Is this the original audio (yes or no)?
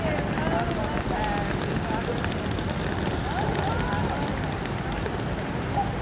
yes